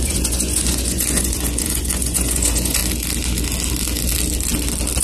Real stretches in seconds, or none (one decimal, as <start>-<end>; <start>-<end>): 2.8-5.0